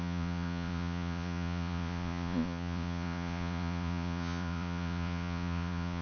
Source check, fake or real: fake